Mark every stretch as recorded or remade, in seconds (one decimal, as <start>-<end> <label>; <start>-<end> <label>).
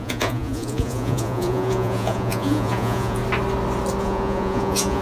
0.0-3.2 remade; 3.2-4.0 recorded; 4.0-5.0 remade